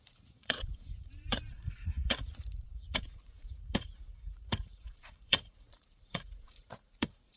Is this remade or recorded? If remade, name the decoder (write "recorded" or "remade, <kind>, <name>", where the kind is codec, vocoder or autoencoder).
remade, vocoder, Vocos